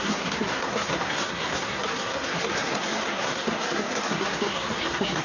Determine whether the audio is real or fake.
fake